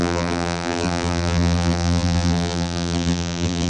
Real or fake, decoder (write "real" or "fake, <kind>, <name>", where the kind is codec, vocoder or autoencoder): fake, vocoder, BigVGAN v2